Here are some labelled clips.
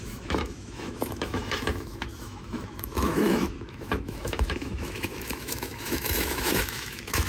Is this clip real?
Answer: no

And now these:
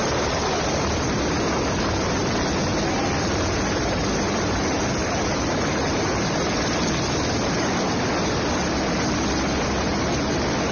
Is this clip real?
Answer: yes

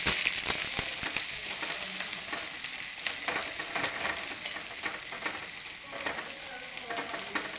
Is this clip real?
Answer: yes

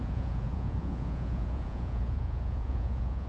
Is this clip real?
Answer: no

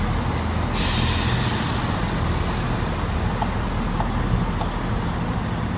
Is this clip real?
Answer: yes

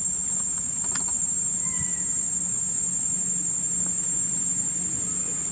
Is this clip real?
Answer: yes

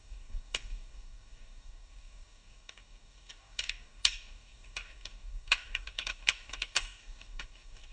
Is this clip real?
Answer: no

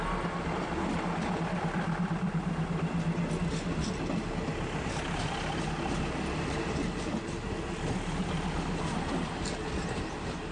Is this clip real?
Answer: yes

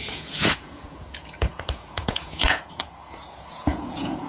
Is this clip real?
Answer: no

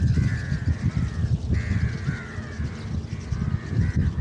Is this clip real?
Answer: yes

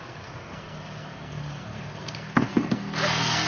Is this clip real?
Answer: no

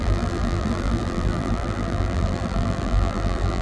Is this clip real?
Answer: no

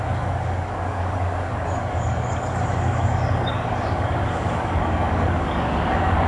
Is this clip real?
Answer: no